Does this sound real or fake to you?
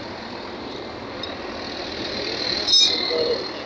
real